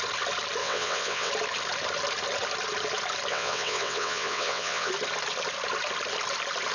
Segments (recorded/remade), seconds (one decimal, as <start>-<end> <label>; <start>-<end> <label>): 0.0-0.6 recorded; 0.6-1.3 remade; 1.3-3.3 recorded; 3.3-4.9 remade; 4.9-6.7 recorded